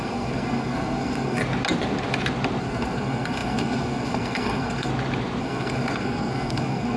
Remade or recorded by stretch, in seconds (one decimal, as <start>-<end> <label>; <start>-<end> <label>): 0.0-1.4 remade; 1.4-2.6 recorded; 2.6-4.9 remade; 4.9-5.4 recorded; 5.4-7.0 remade